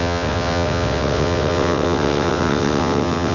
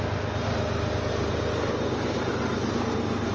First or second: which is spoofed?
first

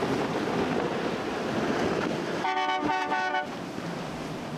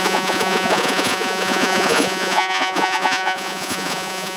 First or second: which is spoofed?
second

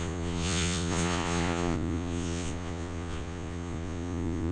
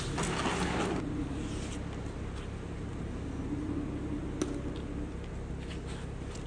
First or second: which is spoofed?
first